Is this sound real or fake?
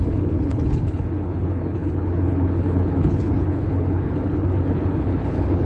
fake